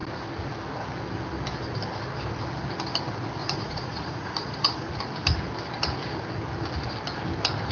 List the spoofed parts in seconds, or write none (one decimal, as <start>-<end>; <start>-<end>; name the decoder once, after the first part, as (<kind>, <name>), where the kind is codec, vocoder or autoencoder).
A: 3.4-4.9 (vocoder, Vocos)